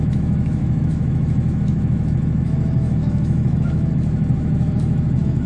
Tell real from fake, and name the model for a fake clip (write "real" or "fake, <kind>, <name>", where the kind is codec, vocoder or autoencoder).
fake, autoencoder, DAC-VAE